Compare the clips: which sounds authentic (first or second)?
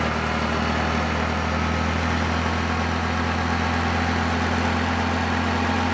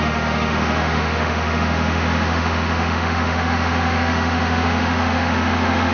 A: first